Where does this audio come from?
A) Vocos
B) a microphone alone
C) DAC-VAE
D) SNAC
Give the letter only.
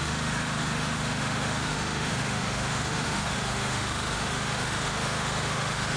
C